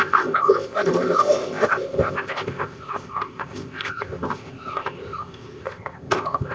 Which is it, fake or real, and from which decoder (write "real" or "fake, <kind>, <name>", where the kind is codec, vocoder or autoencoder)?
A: fake, codec, ZipCodec